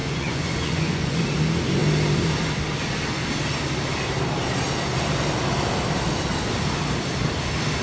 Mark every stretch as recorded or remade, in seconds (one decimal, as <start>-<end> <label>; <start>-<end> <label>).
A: 0.0-1.2 remade; 1.2-7.8 recorded